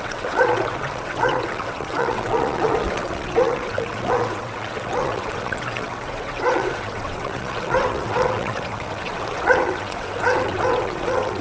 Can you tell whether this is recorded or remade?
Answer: remade